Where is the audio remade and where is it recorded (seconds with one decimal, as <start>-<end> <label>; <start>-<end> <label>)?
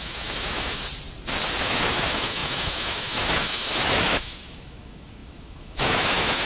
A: 0.0-0.8 remade; 0.8-1.6 recorded; 1.6-6.5 remade